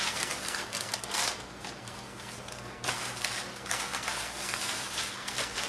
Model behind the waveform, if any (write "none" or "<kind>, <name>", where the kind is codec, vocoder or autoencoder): codec, SNAC